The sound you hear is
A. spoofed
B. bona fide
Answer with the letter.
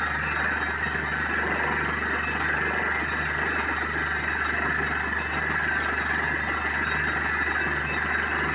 B